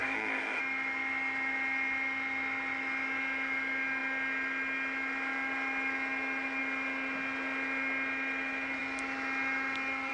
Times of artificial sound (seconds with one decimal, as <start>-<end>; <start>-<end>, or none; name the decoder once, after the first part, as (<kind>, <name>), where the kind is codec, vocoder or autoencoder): 0.0-0.6 (codec, SNAC)